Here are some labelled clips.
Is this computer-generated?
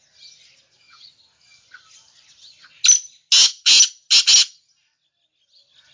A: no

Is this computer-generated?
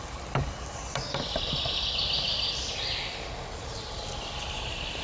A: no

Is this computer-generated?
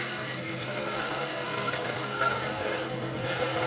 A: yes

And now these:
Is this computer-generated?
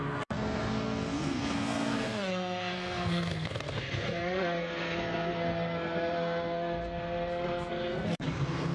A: yes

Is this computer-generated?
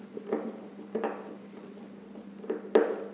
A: no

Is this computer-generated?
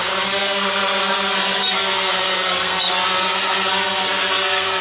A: yes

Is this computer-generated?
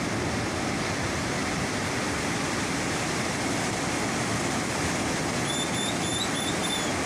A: no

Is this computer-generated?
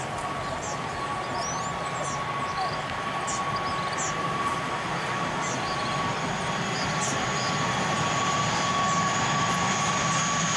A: no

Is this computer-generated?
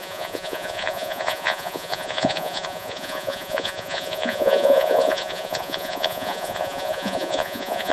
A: yes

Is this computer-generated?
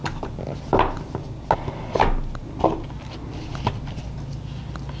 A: no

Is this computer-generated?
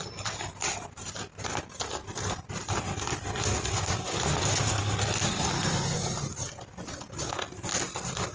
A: no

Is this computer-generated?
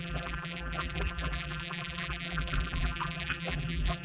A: yes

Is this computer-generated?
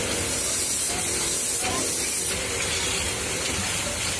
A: no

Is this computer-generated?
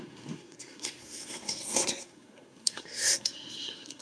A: yes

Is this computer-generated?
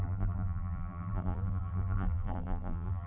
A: yes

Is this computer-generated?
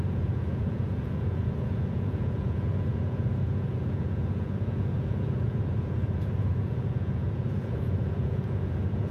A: yes